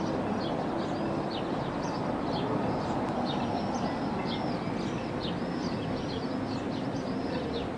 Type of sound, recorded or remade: recorded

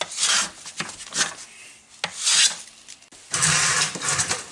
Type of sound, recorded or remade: recorded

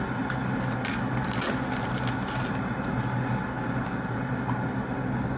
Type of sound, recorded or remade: recorded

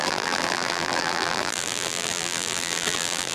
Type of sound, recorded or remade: remade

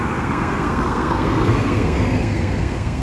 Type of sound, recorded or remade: remade